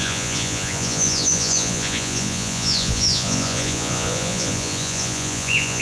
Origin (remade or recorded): remade